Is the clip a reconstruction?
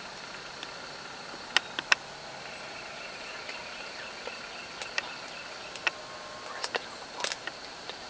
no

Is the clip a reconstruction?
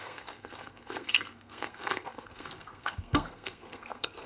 yes